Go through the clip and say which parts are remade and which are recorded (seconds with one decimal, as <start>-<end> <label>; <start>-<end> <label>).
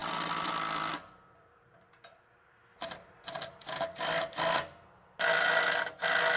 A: 0.0-0.9 recorded; 0.9-2.6 remade; 2.6-6.4 recorded